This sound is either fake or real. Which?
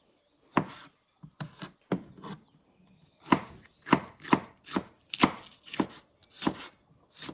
real